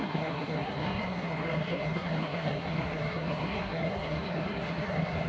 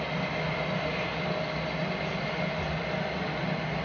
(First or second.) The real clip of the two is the second